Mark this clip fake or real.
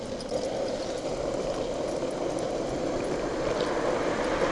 real